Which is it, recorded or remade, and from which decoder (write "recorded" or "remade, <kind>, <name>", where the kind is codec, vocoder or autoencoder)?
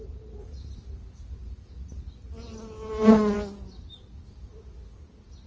recorded